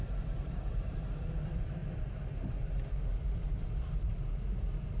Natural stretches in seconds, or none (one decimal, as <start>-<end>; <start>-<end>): 1.8-3.3